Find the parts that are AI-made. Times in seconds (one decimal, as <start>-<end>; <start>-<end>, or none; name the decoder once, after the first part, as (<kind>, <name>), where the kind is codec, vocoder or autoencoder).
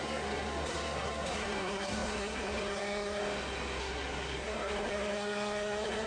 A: 0.0-3.2 (codec, SNAC); 3.8-6.1